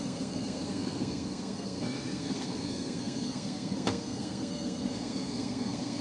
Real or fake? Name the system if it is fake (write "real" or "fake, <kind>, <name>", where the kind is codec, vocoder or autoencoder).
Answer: fake, codec, SNAC